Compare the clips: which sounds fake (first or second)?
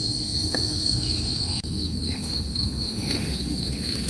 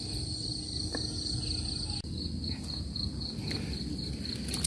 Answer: first